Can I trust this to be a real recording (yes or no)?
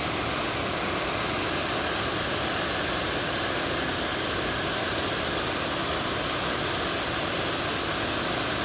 yes